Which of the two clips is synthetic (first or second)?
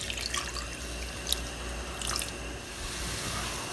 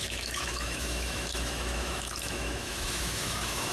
second